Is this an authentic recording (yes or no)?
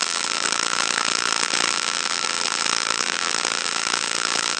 no